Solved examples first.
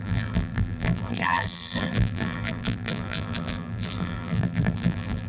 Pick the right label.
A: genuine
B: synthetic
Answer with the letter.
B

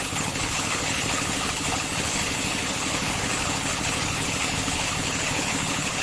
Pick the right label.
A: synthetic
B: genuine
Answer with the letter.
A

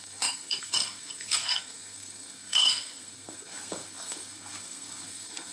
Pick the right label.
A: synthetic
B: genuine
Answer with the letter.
A